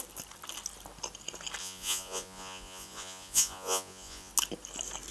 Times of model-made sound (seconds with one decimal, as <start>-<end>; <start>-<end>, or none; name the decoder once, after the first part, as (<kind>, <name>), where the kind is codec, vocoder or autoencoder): 1.6-4.3 (vocoder, Vocos)